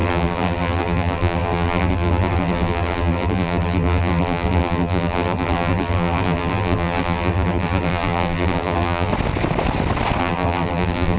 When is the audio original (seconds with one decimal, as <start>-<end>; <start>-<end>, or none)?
9.1-10.2